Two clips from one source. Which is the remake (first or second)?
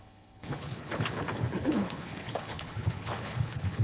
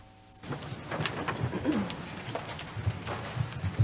first